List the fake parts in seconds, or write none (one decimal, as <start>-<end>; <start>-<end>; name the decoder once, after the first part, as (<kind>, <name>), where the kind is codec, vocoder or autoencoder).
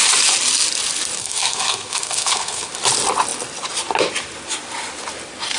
1.2-2.7 (codec, SNAC)